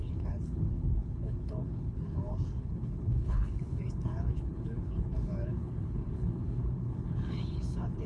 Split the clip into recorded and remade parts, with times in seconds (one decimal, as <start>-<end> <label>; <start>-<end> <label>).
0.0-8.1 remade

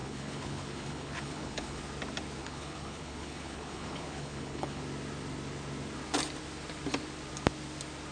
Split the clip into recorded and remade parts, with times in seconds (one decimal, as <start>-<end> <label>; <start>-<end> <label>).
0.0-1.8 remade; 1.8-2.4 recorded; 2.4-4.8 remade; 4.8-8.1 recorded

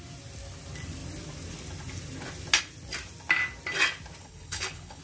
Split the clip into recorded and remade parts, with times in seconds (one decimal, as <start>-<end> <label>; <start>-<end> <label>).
0.0-4.2 recorded; 4.2-5.0 remade

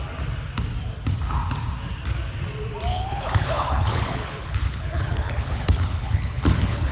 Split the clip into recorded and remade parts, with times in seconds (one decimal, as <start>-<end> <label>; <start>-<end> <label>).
0.0-2.9 recorded; 2.9-6.9 remade

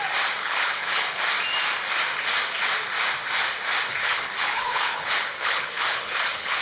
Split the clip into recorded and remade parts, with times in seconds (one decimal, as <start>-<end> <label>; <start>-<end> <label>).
0.0-0.4 recorded; 0.4-1.2 remade; 1.2-3.9 recorded; 3.9-6.6 remade

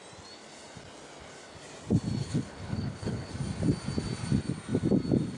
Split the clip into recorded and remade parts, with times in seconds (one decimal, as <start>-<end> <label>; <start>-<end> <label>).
0.0-2.2 recorded; 2.2-3.3 remade; 3.3-5.4 recorded

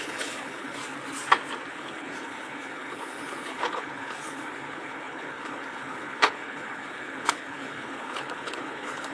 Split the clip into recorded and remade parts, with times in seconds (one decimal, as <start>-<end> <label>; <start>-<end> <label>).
0.0-0.8 remade; 0.8-1.7 recorded; 1.7-9.1 remade